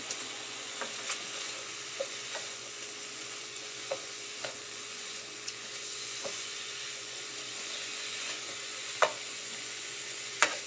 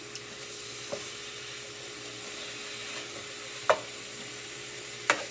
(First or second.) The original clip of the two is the second